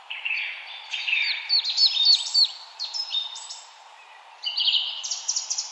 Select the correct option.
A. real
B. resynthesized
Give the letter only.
B